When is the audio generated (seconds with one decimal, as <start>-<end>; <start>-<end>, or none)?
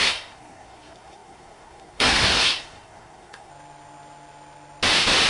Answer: 0.0-3.5